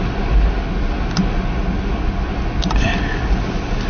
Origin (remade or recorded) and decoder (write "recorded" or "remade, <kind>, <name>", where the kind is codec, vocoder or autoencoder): recorded